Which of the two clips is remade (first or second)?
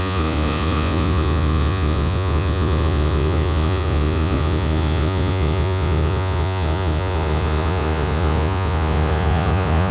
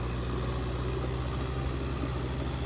first